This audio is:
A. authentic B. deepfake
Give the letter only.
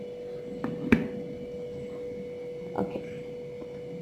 A